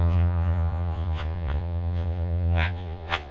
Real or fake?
fake